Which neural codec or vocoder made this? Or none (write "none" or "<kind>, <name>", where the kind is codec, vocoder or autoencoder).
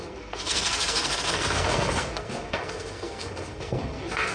codec, SNAC